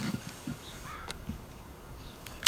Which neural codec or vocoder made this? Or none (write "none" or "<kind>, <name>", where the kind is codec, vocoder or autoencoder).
codec, DAC